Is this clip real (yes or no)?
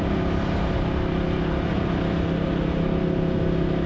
yes